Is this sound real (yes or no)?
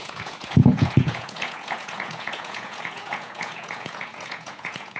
no